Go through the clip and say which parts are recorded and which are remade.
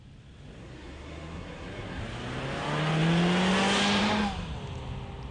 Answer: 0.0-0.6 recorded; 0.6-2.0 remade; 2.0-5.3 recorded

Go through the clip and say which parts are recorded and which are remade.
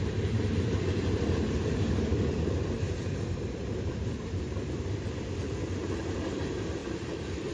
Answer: 0.0-7.5 remade